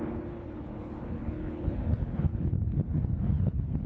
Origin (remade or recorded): remade